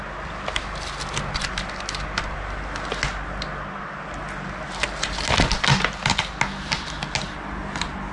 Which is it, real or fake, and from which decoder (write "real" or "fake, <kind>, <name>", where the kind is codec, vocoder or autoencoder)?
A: real